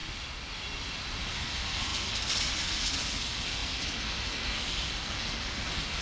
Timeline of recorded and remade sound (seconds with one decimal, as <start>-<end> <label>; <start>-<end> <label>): 0.0-1.3 recorded; 1.3-6.0 remade